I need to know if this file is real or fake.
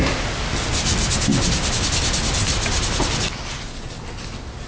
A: real